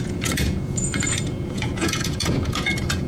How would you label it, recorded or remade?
remade